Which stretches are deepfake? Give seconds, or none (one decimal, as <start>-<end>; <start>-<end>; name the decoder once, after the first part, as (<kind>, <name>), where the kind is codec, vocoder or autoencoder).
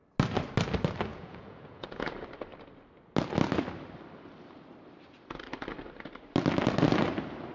1.1-2.1 (vocoder, Vocos)